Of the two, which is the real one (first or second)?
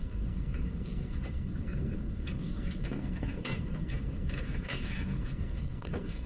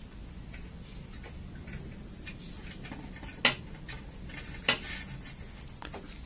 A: second